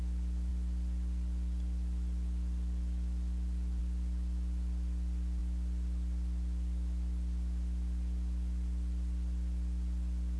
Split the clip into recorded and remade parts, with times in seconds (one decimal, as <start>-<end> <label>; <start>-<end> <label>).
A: 0.0-0.5 recorded; 0.5-3.8 remade; 3.8-10.4 recorded